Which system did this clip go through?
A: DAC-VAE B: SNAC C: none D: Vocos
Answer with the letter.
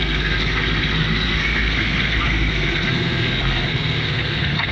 B